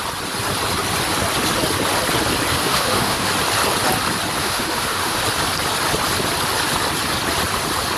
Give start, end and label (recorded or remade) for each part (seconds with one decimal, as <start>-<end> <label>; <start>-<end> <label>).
0.0-2.5 recorded; 2.5-3.3 remade; 3.3-4.4 recorded; 4.4-5.2 remade; 5.2-8.0 recorded